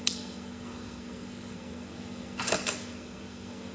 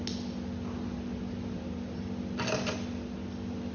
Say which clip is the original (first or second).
second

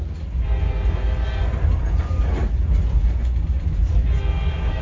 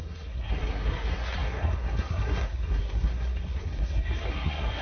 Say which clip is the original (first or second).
first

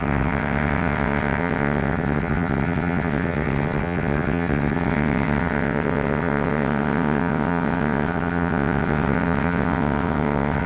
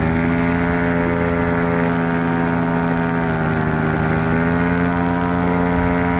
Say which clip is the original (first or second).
second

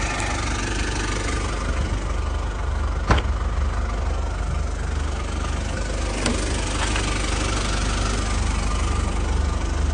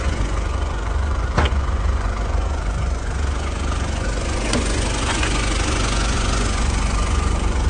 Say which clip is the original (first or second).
first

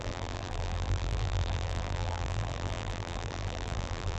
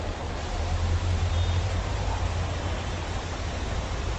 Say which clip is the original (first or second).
second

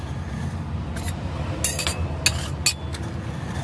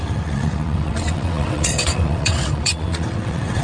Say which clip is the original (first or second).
first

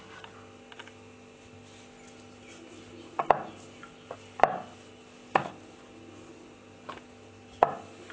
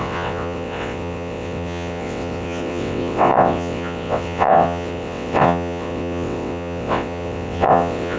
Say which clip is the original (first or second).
first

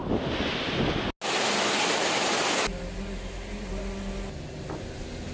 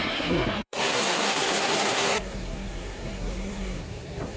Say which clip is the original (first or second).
first